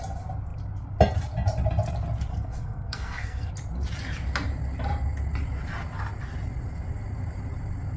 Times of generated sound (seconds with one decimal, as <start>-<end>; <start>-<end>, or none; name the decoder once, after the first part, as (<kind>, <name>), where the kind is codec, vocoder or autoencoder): 2.3-3.5 (codec, SNAC)

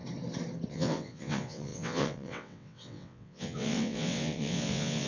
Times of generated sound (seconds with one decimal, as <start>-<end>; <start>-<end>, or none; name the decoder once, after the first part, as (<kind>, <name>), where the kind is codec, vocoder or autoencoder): 0.7-5.1 (vocoder, WaveNeXt)

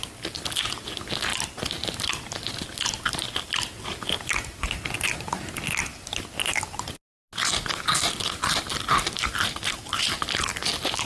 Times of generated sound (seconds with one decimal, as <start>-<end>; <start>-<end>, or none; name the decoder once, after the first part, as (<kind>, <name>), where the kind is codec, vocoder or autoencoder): none

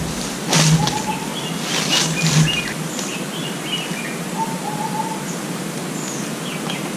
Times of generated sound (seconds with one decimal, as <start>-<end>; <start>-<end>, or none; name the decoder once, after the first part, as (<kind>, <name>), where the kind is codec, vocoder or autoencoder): none

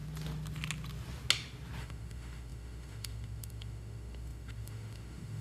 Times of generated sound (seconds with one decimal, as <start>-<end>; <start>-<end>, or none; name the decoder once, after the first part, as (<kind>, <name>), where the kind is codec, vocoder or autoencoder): 1.8-5.4 (autoencoder, DAC-VAE)